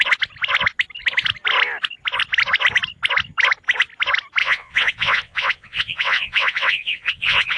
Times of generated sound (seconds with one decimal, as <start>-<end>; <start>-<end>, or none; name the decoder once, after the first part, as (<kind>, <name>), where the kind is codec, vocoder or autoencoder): 4.4-7.6 (vocoder, WaveNeXt)